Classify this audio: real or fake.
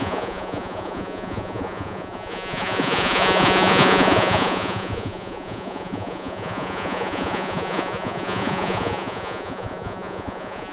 fake